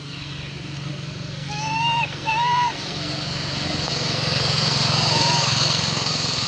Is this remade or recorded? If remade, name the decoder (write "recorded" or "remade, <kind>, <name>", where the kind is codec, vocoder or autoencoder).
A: remade, codec, SNAC